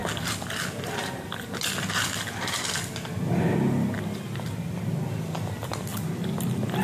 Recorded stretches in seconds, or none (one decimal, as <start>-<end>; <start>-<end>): 0.0-6.8